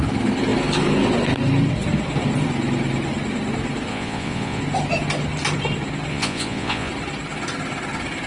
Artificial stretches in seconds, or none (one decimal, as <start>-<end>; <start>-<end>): 3.9-4.6; 6.1-6.9